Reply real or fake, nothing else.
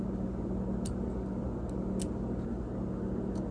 real